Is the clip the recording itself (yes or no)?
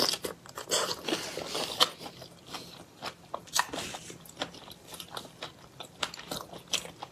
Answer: no